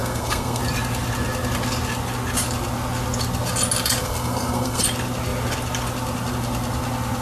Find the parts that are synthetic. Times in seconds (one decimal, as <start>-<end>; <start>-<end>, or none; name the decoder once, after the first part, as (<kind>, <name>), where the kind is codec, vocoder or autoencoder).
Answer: 0.0-0.6 (codec, SNAC); 4.0-4.8

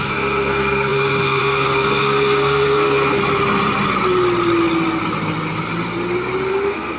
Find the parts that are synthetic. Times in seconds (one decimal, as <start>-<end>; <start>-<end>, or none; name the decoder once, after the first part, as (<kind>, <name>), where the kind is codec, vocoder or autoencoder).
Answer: 0.0-3.2 (codec, SNAC); 6.5-7.0